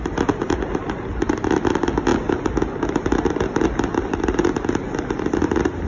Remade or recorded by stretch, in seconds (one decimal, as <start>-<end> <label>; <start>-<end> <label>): 0.0-5.9 recorded